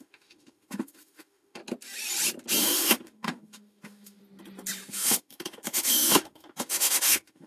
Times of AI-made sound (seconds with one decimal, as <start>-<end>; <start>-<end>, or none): 0.0-1.6; 2.6-4.2; 4.9-7.5